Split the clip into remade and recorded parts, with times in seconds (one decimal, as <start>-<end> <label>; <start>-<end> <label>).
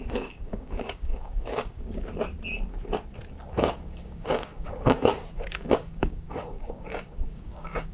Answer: 0.0-2.1 remade; 2.1-3.5 recorded; 3.5-7.9 remade